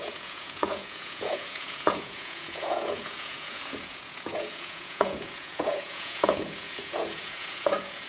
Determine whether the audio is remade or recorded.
remade